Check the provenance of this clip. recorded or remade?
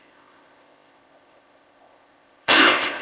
remade